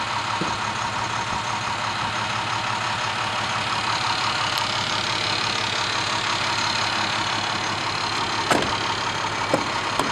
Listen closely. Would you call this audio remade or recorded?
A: recorded